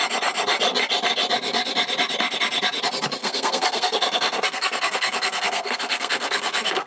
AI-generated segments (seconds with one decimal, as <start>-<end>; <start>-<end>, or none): 3.2-6.9